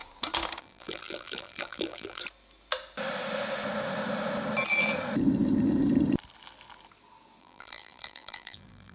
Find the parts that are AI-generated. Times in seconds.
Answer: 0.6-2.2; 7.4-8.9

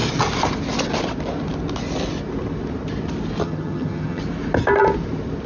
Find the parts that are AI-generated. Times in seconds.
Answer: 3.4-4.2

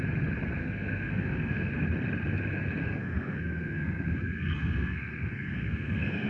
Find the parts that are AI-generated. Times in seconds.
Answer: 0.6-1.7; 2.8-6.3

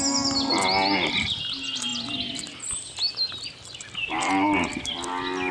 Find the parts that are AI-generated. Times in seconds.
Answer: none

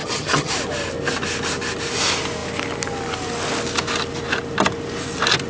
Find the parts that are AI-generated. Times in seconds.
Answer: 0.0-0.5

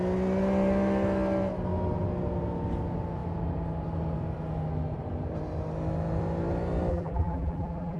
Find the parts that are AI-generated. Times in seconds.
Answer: 6.9-8.0

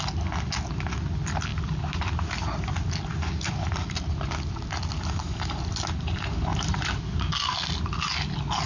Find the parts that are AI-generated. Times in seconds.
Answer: 1.5-2.7; 6.5-7.3

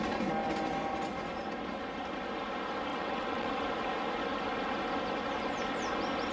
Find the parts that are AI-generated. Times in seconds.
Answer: 2.9-3.5